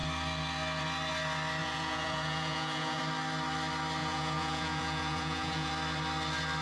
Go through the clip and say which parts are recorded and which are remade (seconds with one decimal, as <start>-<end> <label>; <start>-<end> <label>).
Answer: 0.0-1.6 recorded; 1.6-3.0 remade; 3.0-4.0 recorded; 4.0-5.7 remade; 5.7-6.6 recorded